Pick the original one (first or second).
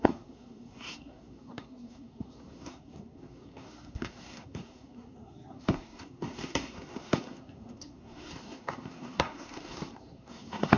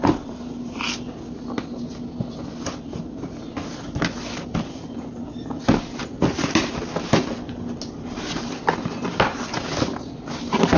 second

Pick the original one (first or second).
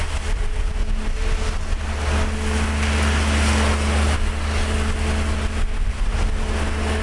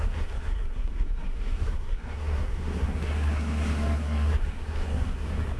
first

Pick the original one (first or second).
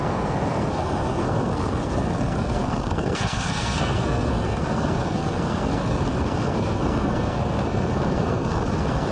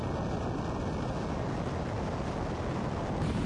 second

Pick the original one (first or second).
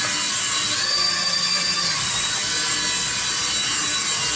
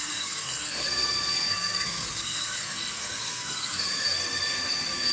first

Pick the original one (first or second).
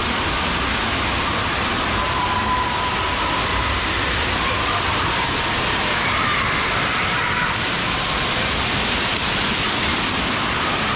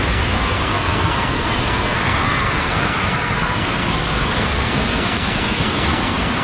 first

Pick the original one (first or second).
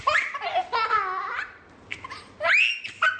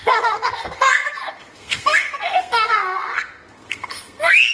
first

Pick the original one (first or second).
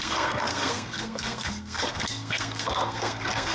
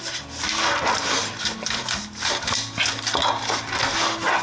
second